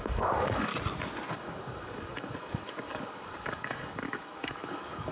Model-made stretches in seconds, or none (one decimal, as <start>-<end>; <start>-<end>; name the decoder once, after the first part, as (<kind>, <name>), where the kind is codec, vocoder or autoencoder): 0.0-0.7 (codec, DAC); 1.3-5.1